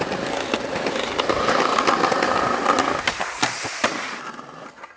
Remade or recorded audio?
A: recorded